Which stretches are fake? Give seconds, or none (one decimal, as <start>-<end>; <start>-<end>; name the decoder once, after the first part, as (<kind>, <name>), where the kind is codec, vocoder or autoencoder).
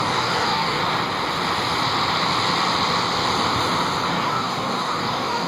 0.0-0.8 (codec, DAC); 4.1-5.5